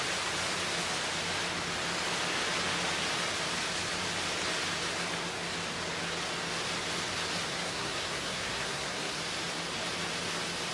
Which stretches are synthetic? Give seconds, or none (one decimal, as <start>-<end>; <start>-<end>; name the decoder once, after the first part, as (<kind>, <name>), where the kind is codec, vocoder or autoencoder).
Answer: 7.5-9.2 (codec, SNAC)